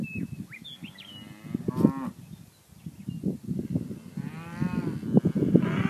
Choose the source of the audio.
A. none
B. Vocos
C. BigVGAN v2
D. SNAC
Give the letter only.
A